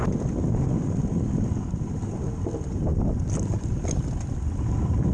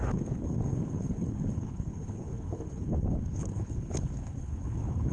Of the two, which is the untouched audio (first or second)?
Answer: first